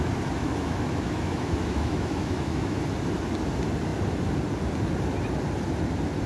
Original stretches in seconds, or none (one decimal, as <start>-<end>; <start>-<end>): 0.0-0.4; 2.8-6.3